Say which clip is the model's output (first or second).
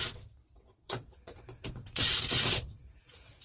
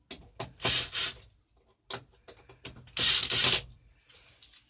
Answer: first